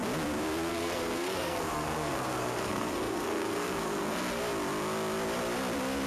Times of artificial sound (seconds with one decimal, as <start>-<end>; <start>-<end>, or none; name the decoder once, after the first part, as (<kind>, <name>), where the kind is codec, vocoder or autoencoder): 0.7-4.4 (codec, SNAC)